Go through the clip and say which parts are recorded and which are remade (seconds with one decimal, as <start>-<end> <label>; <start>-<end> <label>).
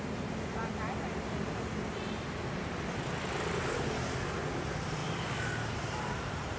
0.0-0.6 remade; 0.6-4.6 recorded; 4.6-5.0 remade; 5.0-5.7 recorded; 5.7-6.6 remade